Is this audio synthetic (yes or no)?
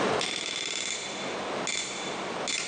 no